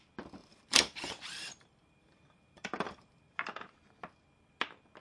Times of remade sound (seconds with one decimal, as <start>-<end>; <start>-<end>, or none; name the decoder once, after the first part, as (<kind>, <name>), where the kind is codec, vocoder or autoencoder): 0.4-3.3 (vocoder, BigVGAN v2)

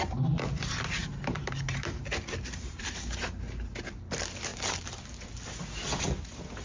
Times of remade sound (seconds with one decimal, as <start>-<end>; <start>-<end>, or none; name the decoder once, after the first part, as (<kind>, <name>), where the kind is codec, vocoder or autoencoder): 1.0-3.2 (vocoder, BigVGAN v2); 4.5-5.3

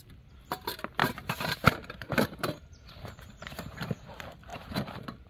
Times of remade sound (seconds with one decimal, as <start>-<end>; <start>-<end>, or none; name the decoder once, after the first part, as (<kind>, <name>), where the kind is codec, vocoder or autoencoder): 1.0-3.9 (vocoder, BigVGAN v2); 4.5-5.3

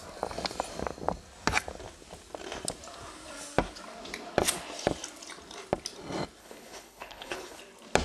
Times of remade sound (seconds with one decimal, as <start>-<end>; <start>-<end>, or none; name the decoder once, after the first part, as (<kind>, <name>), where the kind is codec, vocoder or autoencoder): 6.4-7.6 (codec, HILCodec)

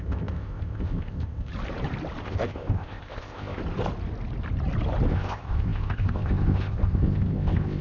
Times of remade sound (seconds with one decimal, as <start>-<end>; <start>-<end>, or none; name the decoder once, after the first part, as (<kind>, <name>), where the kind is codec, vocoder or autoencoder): 0.0-1.5 (codec, ZipCodec); 2.2-3.6; 5.1-7.8

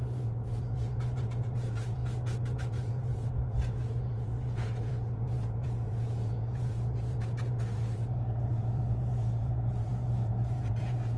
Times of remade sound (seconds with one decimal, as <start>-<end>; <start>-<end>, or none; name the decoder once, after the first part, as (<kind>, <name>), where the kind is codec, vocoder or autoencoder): 0.0-2.0 (vocoder, Vocos); 2.7-11.2

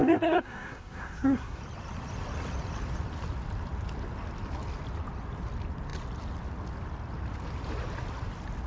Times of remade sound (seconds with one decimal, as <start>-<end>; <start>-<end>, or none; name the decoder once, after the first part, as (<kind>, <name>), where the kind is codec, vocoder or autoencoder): 0.0-1.6 (codec, SNAC)